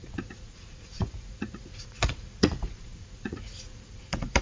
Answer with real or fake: fake